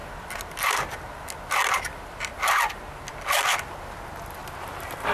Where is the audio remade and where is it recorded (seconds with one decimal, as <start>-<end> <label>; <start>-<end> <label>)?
0.0-4.4 recorded; 4.4-5.1 remade